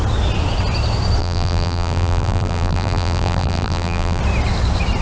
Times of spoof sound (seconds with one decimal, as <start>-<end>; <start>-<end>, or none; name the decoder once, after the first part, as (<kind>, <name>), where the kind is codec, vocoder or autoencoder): 1.2-4.2 (vocoder, BigVGAN v2)